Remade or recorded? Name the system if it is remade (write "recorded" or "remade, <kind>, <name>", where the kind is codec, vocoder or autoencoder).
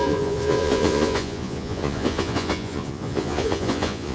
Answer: remade, vocoder, Vocos